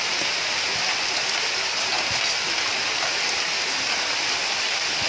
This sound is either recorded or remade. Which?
recorded